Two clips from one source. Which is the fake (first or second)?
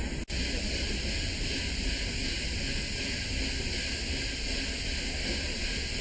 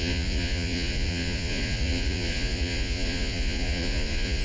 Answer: second